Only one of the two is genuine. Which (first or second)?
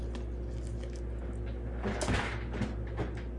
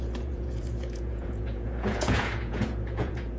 first